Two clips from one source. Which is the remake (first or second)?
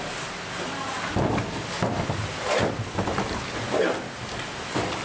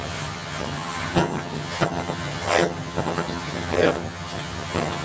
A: second